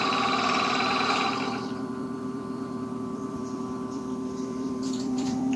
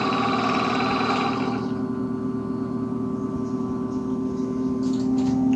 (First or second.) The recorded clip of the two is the second